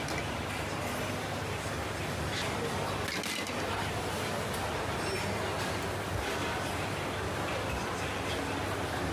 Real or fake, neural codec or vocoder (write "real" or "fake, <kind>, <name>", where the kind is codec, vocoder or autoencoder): real